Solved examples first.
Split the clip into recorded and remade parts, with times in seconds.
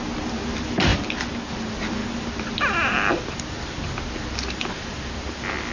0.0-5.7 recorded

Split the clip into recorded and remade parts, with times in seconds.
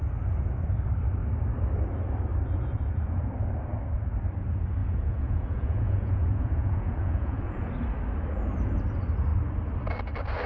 0.0-4.8 recorded; 4.8-7.7 remade; 7.7-10.5 recorded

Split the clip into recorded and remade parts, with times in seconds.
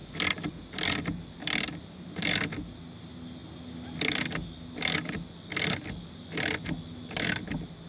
0.0-7.9 recorded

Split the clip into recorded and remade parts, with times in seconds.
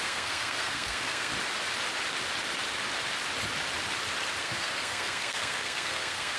0.0-1.3 remade; 1.3-4.4 recorded; 4.4-6.4 remade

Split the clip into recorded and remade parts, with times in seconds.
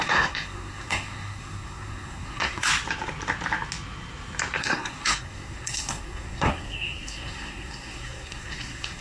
0.0-2.7 remade; 2.7-4.6 recorded; 4.6-9.0 remade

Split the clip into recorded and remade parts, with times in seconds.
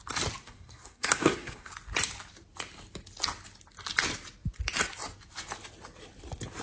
0.0-0.4 recorded; 0.4-1.7 remade; 1.7-6.6 recorded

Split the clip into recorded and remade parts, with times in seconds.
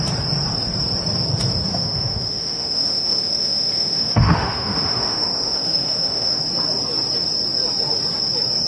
0.0-1.7 recorded; 1.7-6.4 remade; 6.4-8.7 recorded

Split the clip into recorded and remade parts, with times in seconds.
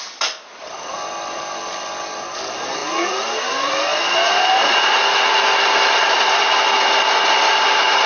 0.0-8.1 recorded